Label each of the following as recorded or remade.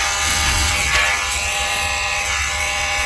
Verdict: remade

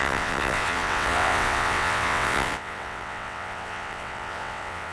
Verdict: remade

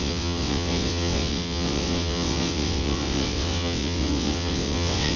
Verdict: remade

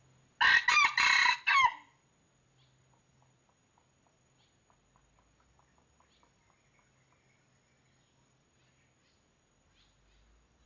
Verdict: recorded